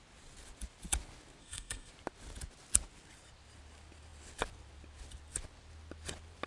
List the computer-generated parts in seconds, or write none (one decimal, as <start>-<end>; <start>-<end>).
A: 1.4-1.9